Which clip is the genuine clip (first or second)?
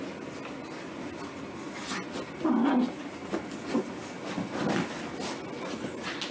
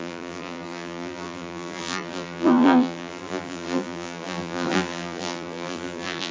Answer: first